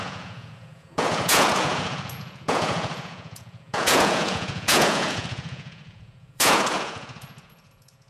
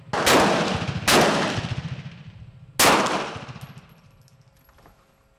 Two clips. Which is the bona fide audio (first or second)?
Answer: second